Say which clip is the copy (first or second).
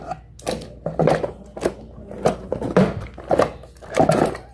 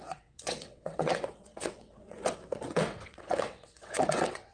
second